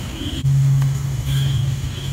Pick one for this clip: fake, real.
fake